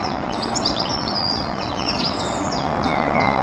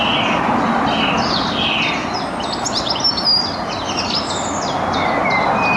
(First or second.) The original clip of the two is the second